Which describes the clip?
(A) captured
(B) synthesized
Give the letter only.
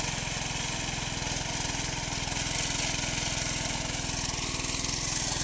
A